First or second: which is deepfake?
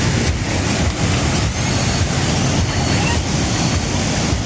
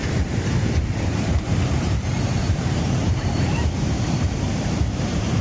second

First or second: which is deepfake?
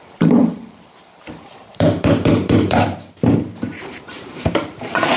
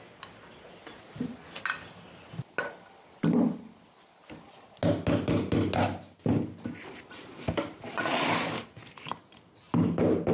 first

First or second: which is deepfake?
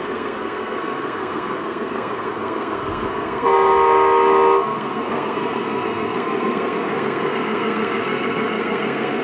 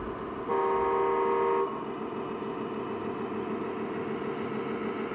first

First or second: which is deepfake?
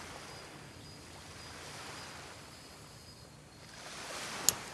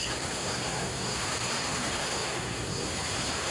second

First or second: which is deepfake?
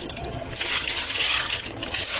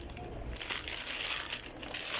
first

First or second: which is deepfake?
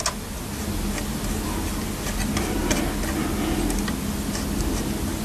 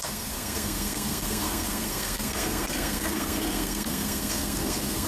second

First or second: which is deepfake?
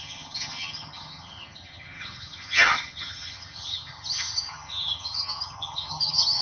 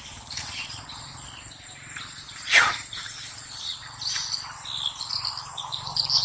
first